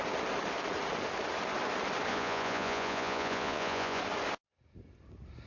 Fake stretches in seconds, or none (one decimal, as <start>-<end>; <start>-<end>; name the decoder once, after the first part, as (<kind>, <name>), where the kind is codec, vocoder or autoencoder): 2.1-4.0 (vocoder, Vocos)